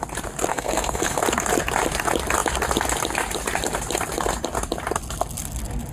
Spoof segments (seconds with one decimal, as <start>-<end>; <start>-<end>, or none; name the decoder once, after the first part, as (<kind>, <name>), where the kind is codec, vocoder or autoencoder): 0.5-1.2 (codec, SNAC)